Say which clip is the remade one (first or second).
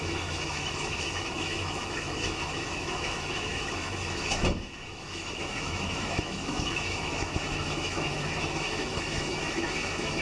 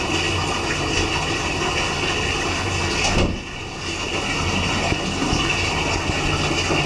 first